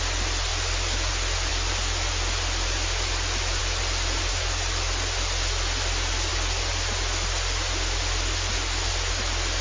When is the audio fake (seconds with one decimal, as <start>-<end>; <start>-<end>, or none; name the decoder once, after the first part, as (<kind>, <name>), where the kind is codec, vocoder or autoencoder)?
none